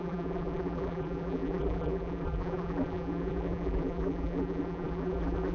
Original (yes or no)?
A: no